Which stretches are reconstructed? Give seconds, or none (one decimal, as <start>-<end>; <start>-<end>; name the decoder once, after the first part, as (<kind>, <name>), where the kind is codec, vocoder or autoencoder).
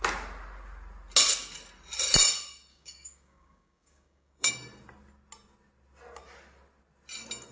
2.7-4.5 (codec, DAC)